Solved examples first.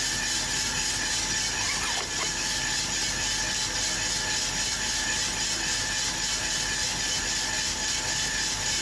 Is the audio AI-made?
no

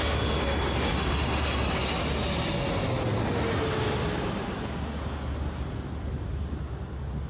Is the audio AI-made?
no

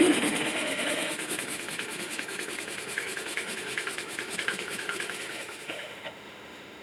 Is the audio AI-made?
yes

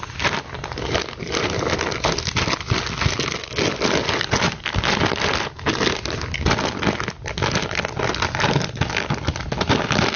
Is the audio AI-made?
no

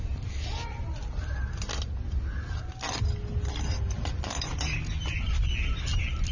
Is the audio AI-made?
no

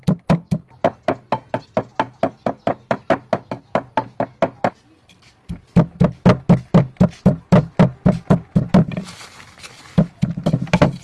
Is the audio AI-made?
no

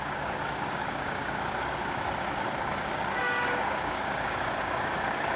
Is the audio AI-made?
yes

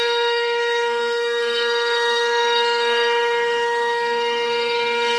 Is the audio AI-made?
yes